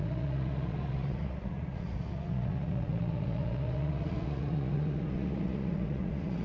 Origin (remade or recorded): remade